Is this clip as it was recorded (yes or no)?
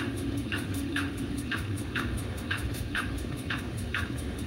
no